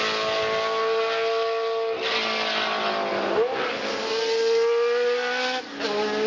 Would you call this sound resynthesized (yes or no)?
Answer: no